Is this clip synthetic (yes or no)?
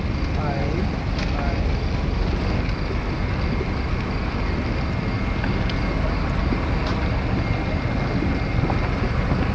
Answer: no